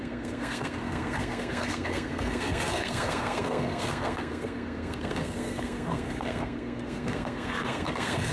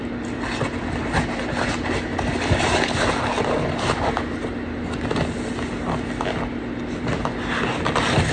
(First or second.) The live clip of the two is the second